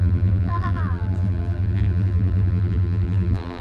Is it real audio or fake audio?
fake